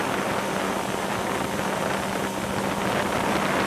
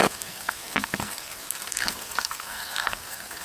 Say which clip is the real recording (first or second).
first